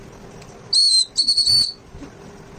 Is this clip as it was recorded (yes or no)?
yes